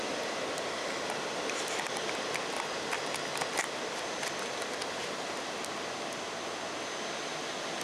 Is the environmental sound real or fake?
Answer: real